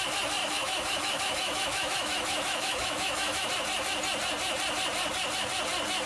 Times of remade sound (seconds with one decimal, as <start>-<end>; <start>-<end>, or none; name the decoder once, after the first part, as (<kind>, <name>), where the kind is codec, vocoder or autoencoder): 0.4-3.5 (autoencoder, DAC-VAE)